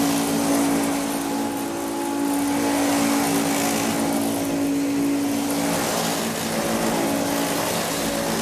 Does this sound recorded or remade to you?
recorded